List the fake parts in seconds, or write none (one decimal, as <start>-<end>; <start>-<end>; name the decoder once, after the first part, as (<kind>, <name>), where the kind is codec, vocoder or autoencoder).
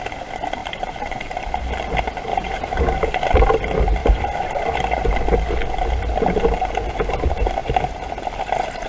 0.6-1.6 (vocoder, BigVGAN v2); 2.3-2.8